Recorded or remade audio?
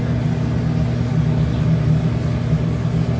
recorded